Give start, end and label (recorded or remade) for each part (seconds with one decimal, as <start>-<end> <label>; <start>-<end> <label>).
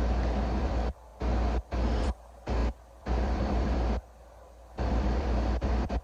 0.0-1.1 remade; 1.1-2.0 recorded; 2.0-6.0 remade